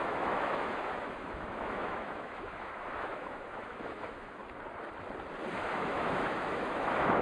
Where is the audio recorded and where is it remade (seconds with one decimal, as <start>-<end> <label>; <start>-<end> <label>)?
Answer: 0.0-4.4 remade; 4.4-5.5 recorded; 5.5-7.2 remade